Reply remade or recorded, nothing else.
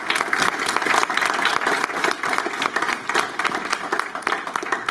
recorded